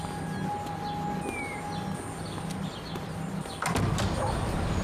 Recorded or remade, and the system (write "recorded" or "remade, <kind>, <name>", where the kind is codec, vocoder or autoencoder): recorded